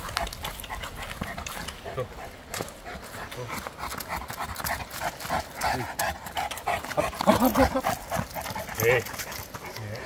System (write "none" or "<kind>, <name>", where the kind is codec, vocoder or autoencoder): none